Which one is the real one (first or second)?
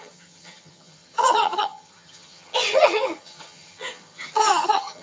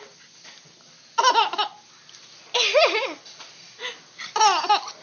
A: second